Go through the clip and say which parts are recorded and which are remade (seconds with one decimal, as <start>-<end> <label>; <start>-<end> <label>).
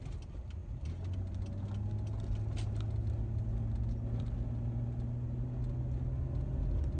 0.0-7.0 recorded